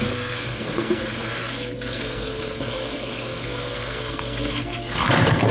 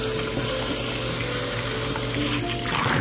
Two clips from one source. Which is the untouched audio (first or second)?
second